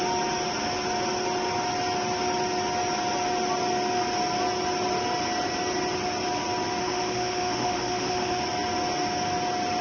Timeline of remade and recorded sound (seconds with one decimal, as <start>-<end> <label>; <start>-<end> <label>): 0.0-6.8 recorded; 6.8-8.4 remade; 8.4-9.8 recorded